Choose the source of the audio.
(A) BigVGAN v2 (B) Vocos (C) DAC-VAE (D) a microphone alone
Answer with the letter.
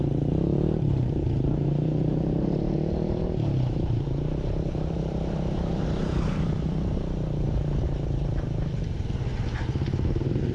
A